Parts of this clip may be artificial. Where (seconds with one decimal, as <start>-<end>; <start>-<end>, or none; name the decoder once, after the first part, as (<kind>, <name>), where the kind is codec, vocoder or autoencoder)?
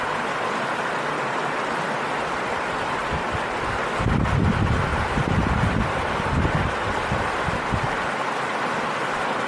4.9-6.7 (vocoder, BigVGAN v2)